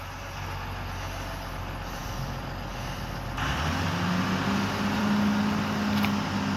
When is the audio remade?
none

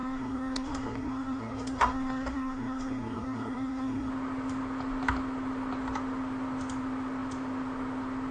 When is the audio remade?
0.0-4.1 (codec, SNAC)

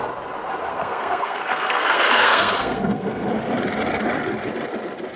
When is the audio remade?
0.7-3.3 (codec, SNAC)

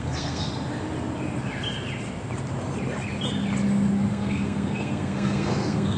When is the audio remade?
0.0-0.5 (codec, SNAC); 4.1-6.0

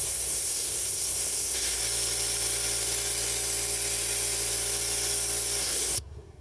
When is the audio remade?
0.0-1.8 (codec, SNAC); 5.6-6.4